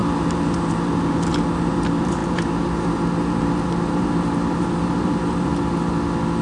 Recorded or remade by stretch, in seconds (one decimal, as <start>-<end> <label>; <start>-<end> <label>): 0.0-5.5 remade; 5.5-6.4 recorded